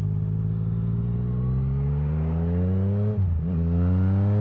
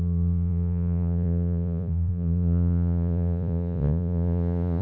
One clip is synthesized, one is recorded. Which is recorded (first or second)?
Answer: first